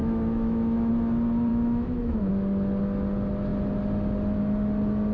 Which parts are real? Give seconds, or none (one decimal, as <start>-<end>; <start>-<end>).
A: 0.9-1.5; 2.3-5.1